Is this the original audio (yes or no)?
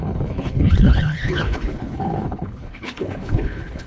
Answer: no